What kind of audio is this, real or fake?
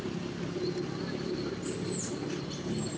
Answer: real